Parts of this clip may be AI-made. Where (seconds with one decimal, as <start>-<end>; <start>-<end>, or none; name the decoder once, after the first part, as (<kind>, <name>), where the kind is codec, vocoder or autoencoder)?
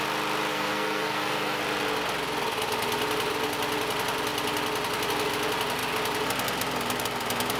0.5-1.6 (codec, SNAC)